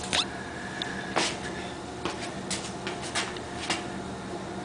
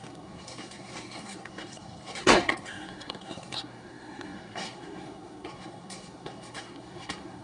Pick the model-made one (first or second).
second